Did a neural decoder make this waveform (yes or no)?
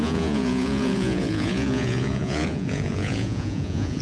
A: yes